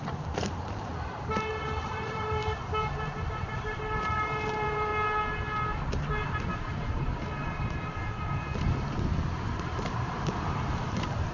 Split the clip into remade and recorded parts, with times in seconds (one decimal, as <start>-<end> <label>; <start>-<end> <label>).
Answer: 0.0-0.9 remade; 0.9-1.5 recorded; 1.5-4.9 remade; 4.9-9.5 recorded; 9.5-11.3 remade